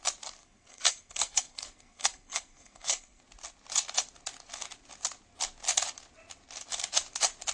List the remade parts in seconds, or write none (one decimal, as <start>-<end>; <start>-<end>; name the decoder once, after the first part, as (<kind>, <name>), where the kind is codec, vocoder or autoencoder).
0.4-3.2 (codec, SNAC)